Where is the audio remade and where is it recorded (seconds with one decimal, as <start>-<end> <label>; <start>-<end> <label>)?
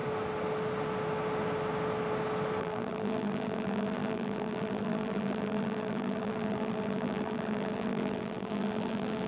0.0-2.6 recorded; 2.6-9.3 remade